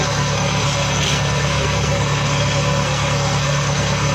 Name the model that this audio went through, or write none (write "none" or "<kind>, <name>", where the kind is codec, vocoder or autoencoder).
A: codec, SNAC